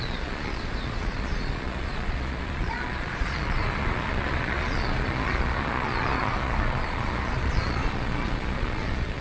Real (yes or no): no